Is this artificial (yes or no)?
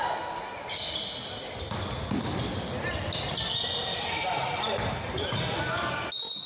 no